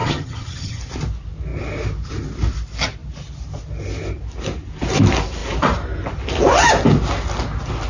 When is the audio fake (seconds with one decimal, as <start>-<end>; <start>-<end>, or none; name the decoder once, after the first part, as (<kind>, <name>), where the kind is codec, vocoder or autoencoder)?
0.0-0.8 (vocoder, HiFi-GAN)